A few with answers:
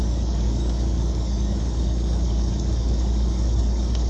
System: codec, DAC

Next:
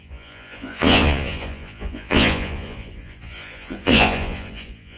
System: vocoder, Vocos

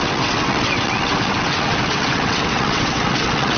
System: vocoder, WaveNeXt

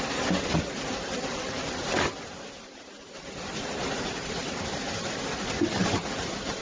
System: vocoder, BigVGAN v2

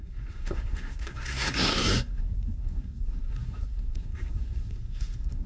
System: codec, SNAC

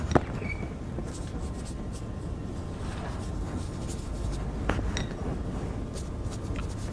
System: none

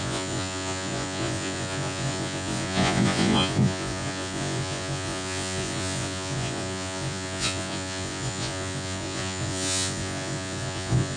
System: vocoder, Vocos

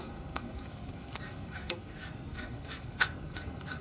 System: codec, SNAC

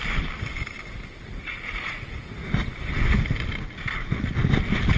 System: none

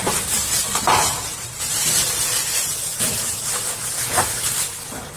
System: vocoder, BigVGAN v2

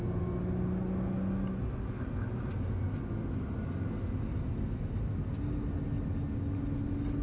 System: none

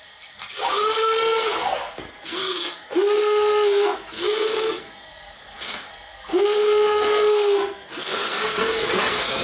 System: codec, SNAC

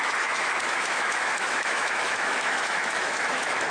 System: autoencoder, DAC-VAE